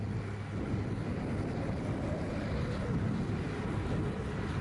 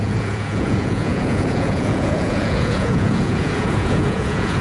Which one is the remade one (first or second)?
second